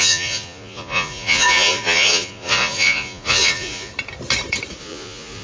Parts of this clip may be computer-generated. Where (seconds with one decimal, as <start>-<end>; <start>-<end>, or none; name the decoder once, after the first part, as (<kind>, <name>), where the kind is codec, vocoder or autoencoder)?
0.0-3.9 (vocoder, Vocos); 4.8-5.4